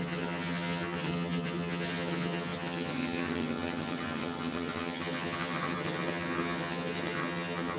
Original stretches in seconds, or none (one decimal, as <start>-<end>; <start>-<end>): none